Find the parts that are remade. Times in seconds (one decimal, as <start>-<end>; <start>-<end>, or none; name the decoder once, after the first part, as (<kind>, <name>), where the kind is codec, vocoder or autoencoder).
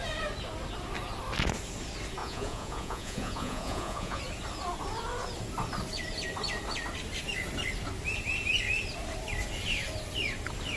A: 2.2-4.2 (vocoder, Vocos)